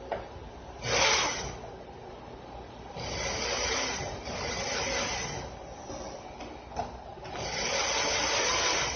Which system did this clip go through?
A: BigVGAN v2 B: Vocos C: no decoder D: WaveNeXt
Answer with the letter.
C